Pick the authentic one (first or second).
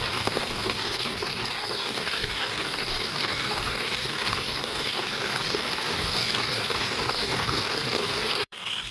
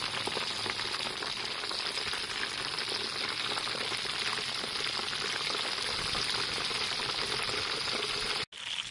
second